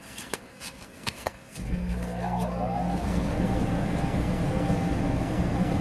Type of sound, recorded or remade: remade